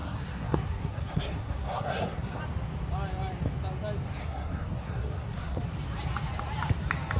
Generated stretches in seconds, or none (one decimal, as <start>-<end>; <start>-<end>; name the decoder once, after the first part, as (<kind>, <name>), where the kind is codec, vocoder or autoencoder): 0.0-2.4 (codec, SNAC); 4.2-5.6